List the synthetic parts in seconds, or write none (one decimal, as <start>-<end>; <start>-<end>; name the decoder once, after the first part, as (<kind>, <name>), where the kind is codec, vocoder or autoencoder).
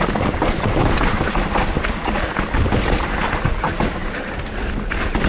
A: none